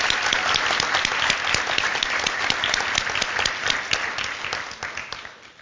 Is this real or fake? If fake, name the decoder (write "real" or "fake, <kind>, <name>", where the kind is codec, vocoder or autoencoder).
real